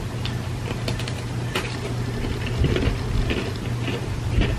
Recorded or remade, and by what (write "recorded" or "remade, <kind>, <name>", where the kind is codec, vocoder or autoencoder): recorded